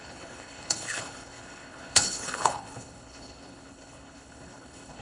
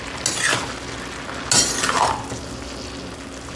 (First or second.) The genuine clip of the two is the second